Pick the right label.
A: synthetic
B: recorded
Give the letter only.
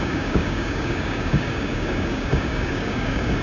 A